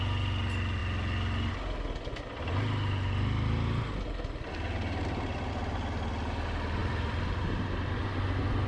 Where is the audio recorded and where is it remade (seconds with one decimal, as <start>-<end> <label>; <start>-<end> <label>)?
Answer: 0.0-6.8 recorded; 6.8-8.1 remade; 8.1-8.7 recorded